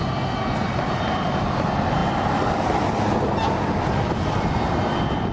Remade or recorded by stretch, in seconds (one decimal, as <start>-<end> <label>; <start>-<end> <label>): 0.0-0.6 recorded; 0.6-2.0 remade; 2.0-4.1 recorded; 4.1-5.3 remade